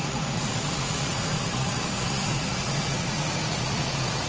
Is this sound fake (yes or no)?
yes